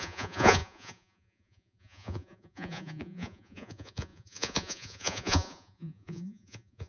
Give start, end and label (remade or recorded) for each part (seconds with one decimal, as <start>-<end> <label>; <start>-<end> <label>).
0.0-6.9 remade